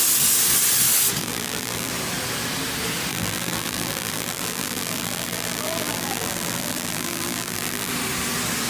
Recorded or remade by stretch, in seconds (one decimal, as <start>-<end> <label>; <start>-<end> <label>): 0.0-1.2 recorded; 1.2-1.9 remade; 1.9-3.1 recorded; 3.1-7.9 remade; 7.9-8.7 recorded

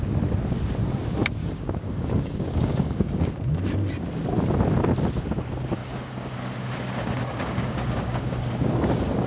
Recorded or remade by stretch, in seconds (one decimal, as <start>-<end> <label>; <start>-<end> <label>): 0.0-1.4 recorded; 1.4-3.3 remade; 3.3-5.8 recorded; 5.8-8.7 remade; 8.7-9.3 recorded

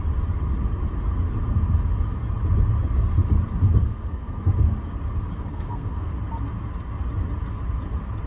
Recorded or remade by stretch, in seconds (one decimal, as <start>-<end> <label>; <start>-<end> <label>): 0.0-3.8 recorded; 3.8-4.4 remade; 4.4-5.5 recorded; 5.5-6.1 remade; 6.1-8.3 recorded

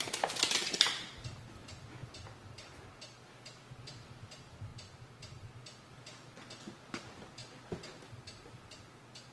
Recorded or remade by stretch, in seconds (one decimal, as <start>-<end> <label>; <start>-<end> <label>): 0.0-9.3 recorded